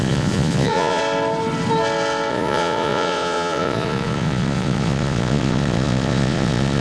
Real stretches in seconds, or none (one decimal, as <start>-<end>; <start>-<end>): 1.0-2.3